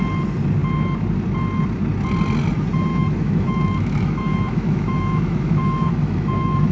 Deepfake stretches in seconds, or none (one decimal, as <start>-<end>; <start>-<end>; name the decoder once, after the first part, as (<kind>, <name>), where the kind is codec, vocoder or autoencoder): 2.9-6.7 (autoencoder, DAC-VAE)